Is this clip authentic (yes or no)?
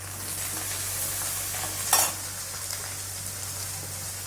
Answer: yes